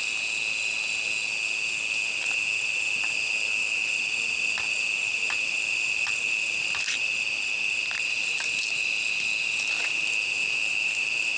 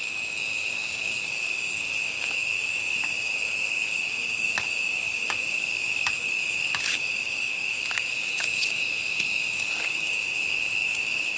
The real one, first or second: first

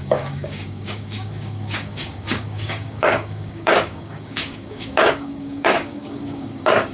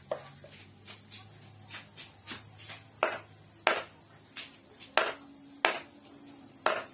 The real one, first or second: second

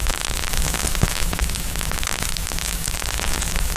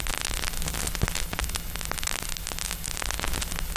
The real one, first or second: second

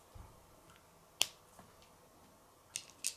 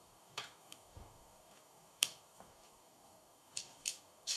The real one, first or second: first